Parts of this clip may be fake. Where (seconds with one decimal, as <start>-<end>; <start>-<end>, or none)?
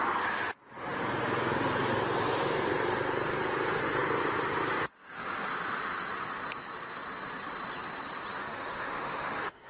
8.4-9.7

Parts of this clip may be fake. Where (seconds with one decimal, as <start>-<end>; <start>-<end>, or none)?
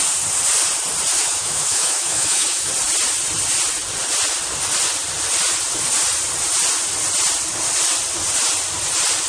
1.1-2.7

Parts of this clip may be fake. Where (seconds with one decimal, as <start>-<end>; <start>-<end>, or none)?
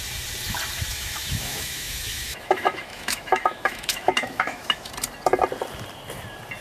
0.9-4.9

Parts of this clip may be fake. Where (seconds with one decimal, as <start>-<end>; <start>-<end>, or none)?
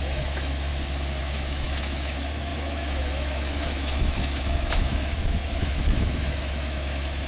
0.0-0.7; 1.2-7.3